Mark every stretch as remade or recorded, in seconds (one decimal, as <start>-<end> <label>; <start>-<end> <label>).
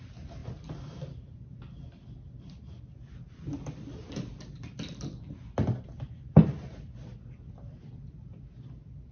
0.0-9.1 recorded